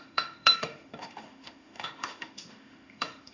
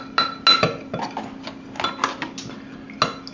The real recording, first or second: second